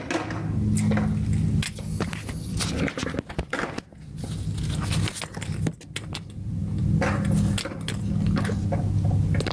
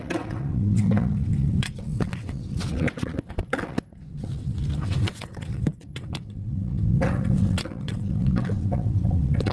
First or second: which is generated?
second